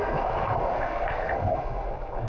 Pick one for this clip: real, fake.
fake